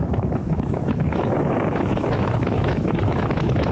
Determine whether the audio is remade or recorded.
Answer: remade